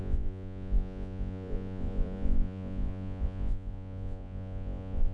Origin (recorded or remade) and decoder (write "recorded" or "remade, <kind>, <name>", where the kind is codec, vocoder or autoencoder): remade, vocoder, Vocos